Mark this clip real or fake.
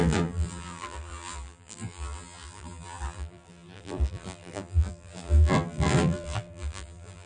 fake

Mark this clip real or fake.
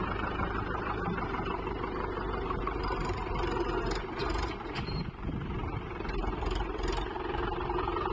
fake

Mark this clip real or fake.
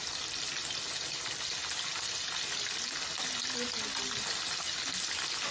real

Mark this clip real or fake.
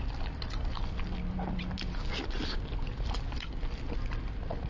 real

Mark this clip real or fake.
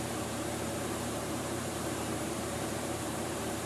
fake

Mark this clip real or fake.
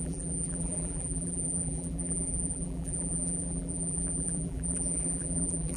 fake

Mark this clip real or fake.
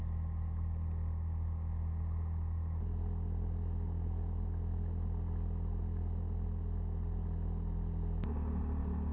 real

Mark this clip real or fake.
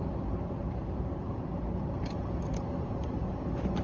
fake